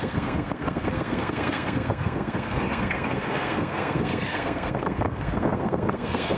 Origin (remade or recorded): remade